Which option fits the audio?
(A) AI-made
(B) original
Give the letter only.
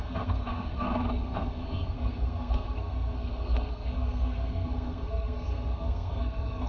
A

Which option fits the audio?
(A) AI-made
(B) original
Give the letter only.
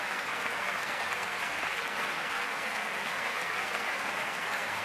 A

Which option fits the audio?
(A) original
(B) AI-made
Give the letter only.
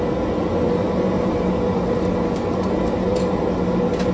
A